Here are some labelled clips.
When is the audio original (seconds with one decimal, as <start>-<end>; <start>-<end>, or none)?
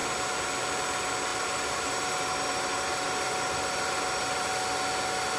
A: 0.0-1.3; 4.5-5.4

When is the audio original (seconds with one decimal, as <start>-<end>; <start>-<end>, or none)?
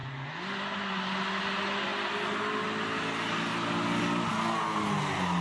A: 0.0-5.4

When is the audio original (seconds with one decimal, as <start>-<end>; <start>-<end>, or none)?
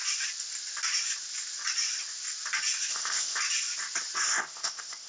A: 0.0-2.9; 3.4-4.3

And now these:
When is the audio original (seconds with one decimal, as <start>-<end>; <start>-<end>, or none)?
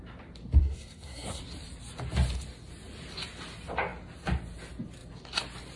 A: 0.0-0.6; 1.4-5.8